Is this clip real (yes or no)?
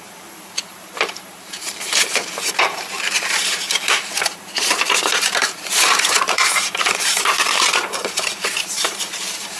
no